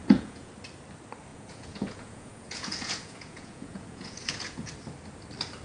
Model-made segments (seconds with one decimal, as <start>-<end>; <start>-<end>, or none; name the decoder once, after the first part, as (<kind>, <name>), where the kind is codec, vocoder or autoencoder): 0.0-0.5 (vocoder, Vocos); 1.3-4.7